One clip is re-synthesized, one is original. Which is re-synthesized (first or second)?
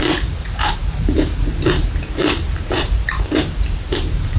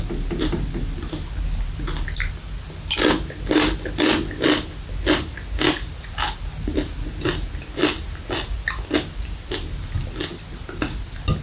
first